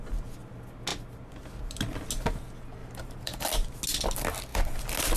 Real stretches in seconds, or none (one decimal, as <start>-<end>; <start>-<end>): 0.0-2.8; 3.4-5.2